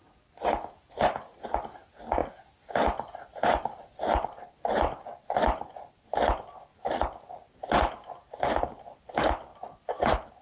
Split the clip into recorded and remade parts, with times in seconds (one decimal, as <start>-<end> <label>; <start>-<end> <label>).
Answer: 0.0-10.4 recorded